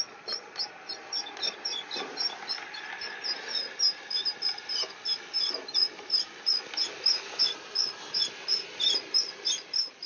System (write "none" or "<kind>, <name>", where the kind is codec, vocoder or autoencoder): none